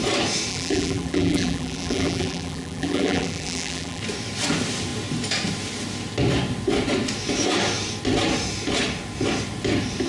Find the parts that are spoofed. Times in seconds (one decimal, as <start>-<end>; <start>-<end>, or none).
0.5-4.0